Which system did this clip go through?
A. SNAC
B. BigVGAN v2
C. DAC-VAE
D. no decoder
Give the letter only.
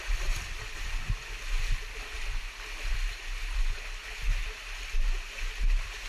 D